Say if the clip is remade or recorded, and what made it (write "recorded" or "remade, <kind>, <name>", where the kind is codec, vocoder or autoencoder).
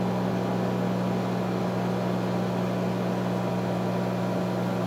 recorded